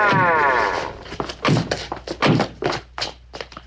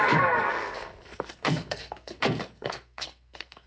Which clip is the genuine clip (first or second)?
first